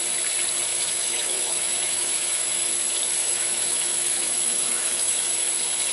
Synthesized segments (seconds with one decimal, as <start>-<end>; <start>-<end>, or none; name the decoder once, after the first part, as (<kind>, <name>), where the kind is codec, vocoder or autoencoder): 0.7-2.7 (autoencoder, DAC-VAE); 3.2-5.5